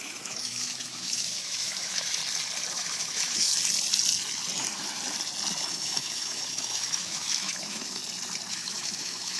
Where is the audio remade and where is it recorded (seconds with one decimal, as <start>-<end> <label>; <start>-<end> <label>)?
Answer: 0.0-2.2 remade; 2.2-2.7 recorded; 2.7-3.5 remade; 3.5-5.7 recorded; 5.7-8.0 remade; 8.0-8.5 recorded; 8.5-9.4 remade